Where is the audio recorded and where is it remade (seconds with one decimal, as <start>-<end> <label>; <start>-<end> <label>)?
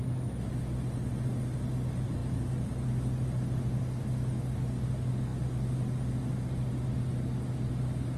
0.0-8.2 recorded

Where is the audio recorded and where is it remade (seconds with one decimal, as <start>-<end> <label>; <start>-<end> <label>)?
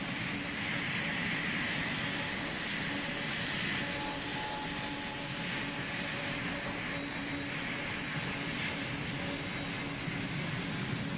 0.0-11.2 recorded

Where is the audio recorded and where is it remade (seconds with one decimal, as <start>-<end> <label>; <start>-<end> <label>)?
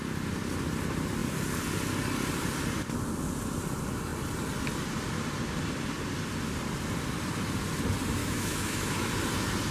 0.0-8.2 recorded; 8.2-9.1 remade; 9.1-9.7 recorded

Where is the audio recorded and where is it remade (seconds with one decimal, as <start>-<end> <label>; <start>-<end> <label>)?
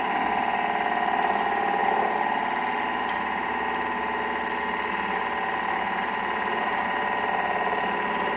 0.0-8.4 recorded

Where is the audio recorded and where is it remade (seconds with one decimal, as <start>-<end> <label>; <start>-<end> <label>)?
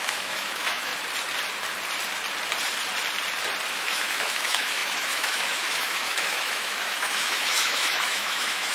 0.0-0.9 remade; 0.9-3.7 recorded; 3.7-8.7 remade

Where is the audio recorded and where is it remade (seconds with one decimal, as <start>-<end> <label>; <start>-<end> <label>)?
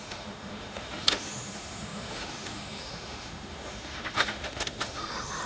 0.0-5.5 remade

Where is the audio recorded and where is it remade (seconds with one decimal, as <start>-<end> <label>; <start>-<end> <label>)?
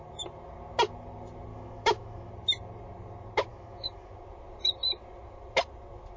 0.0-1.5 recorded; 1.5-2.3 remade; 2.3-3.5 recorded; 3.5-4.1 remade; 4.1-6.2 recorded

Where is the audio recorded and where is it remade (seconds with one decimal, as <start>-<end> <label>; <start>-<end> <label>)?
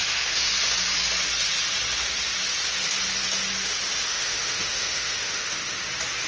0.0-0.5 remade; 0.5-4.1 recorded; 4.1-5.8 remade; 5.8-6.3 recorded